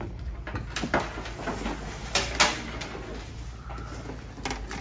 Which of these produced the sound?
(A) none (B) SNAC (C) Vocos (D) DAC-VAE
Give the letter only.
A